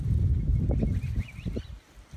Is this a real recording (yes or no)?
yes